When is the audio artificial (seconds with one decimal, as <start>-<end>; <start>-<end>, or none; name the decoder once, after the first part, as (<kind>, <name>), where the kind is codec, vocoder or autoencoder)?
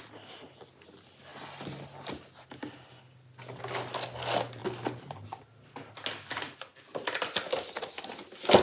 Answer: none